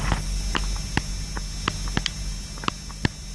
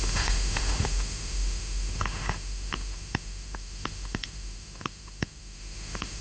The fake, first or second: second